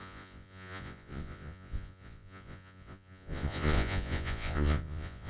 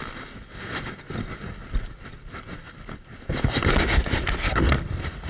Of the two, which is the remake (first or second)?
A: first